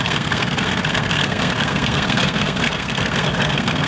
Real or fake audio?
fake